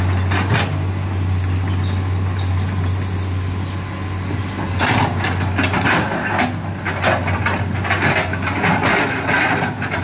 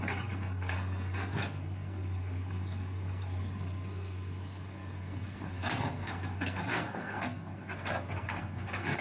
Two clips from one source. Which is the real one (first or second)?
first